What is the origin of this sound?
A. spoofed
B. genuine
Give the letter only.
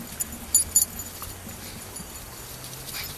B